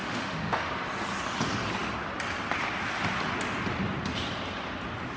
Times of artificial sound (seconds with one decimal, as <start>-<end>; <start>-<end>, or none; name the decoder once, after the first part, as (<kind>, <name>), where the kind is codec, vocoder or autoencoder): 0.0-0.7 (autoencoder, DAC-VAE)